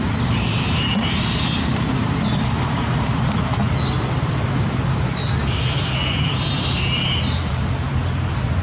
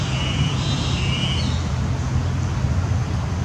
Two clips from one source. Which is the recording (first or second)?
second